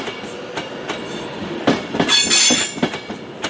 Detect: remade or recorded recorded